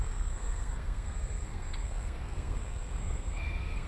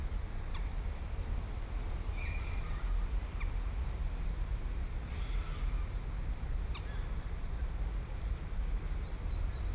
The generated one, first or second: first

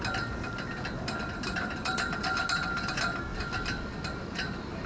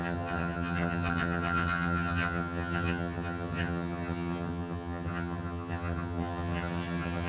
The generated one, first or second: second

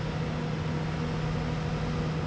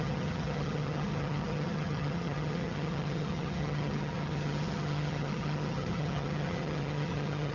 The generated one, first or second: second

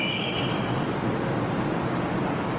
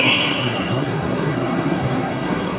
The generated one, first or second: second